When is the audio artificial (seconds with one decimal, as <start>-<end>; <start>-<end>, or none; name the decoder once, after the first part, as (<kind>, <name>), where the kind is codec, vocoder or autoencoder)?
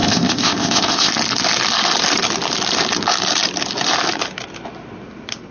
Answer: 0.0-1.1 (codec, ZipCodec)